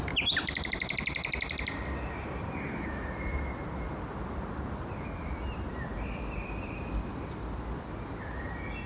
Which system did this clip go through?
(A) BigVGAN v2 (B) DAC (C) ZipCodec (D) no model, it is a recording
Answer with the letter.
D